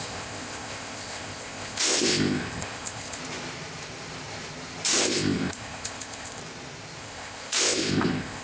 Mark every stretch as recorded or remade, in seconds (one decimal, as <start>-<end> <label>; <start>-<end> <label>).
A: 0.0-3.2 remade; 3.2-5.0 recorded; 5.0-6.4 remade; 6.4-7.0 recorded; 7.0-8.4 remade